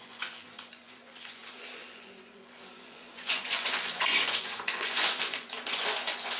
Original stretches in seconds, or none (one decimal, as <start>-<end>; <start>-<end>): none